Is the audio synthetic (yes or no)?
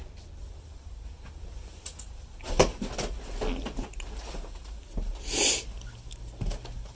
no